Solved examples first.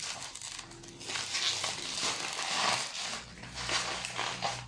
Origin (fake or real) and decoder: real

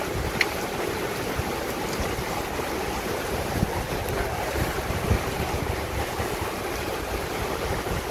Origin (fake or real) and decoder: fake, vocoder, BigVGAN v2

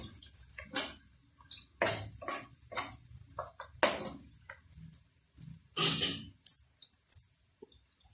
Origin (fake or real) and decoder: real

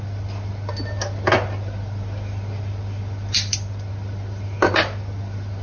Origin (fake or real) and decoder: real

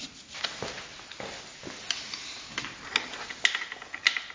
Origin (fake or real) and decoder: real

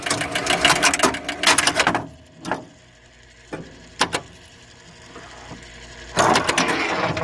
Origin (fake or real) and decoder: real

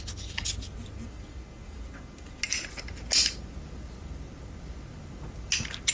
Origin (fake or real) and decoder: real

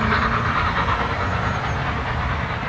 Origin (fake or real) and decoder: real